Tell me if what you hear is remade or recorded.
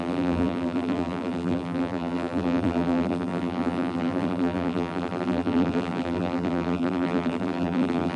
remade